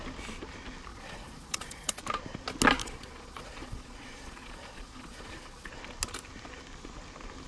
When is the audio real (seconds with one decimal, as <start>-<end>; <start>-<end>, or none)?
0.0-0.9; 2.0-2.8; 5.7-7.5